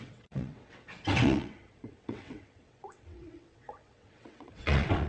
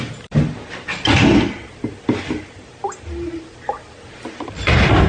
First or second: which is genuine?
second